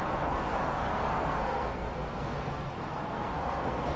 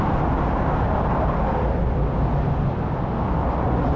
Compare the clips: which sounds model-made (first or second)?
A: first